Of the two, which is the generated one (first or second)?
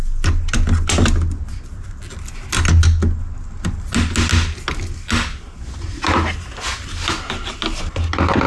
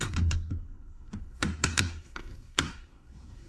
second